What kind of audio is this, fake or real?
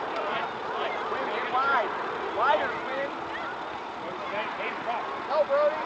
real